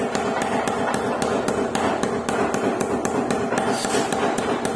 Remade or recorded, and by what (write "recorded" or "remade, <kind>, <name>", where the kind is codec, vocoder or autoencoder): recorded